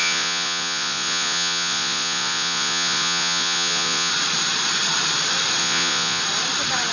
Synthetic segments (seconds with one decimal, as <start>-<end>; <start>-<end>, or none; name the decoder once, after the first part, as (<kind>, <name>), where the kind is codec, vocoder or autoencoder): 0.0-4.1 (vocoder, Vocos); 5.6-6.2